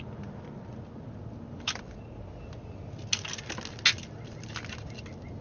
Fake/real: real